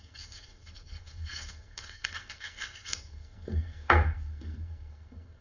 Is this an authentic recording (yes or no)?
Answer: no